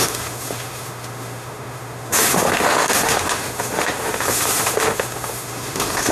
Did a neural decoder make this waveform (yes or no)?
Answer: yes